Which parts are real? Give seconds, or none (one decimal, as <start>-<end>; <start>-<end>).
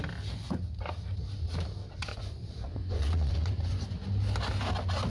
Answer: 0.0-2.1; 3.6-5.1